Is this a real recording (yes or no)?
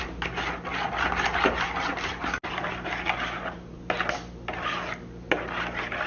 yes